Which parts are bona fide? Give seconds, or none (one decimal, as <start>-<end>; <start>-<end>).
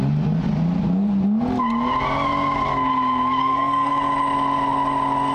0.0-3.4; 3.9-5.3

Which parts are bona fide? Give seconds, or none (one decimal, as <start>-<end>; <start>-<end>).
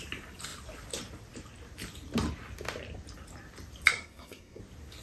0.0-3.9; 4.6-5.0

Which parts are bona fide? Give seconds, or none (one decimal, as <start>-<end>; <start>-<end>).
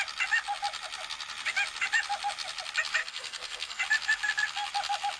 0.0-3.0; 3.8-5.2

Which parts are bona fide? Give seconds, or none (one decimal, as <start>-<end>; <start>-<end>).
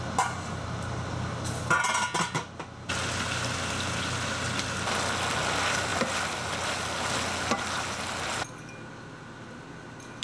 0.0-10.2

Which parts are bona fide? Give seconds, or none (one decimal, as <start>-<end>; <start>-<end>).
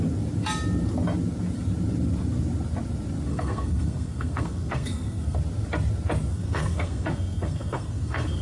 0.0-3.3; 5.4-6.3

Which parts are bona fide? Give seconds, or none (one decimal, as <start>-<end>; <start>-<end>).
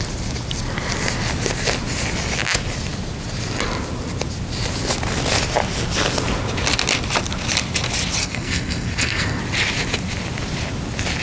0.0-8.2; 9.4-11.2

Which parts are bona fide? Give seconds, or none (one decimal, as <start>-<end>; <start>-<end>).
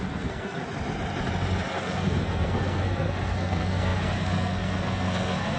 0.6-1.8